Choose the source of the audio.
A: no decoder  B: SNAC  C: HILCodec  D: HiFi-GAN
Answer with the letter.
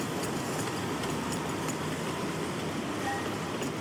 A